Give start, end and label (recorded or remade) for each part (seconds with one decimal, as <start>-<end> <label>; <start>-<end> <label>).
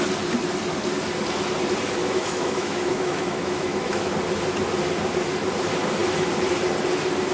0.0-2.0 recorded; 2.0-4.1 remade; 4.1-7.3 recorded